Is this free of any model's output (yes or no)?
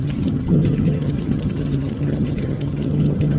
no